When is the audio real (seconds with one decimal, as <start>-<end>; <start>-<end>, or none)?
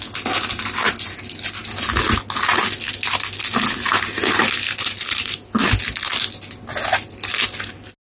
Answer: 0.0-8.1